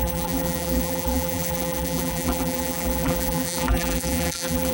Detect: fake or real fake